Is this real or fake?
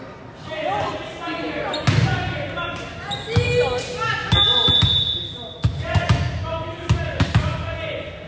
real